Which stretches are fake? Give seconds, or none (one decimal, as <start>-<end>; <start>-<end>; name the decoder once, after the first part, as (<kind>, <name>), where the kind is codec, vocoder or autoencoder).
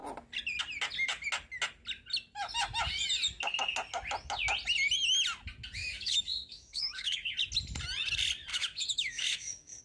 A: 5.8-7.3 (autoencoder, DAC-VAE); 8.5-9.8